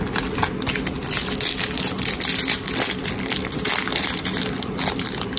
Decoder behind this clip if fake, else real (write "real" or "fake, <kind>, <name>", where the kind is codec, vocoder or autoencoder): real